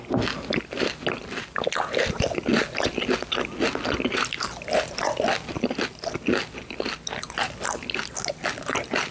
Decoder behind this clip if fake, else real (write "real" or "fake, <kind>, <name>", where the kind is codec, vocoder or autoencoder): real